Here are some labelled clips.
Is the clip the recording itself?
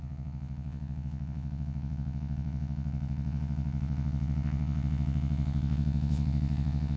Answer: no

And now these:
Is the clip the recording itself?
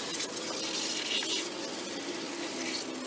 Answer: yes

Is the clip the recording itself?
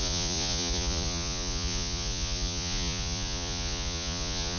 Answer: no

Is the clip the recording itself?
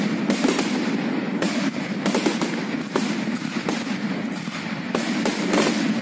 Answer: yes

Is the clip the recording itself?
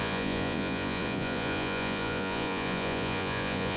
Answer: no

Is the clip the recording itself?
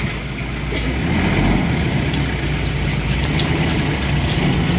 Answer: yes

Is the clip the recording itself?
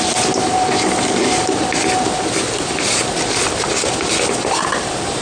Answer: yes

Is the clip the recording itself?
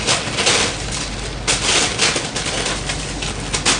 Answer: yes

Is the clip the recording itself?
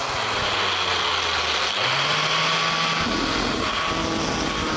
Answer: yes